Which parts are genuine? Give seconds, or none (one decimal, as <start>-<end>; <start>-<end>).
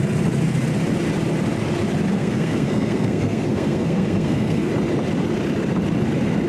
0.0-2.1; 4.7-6.5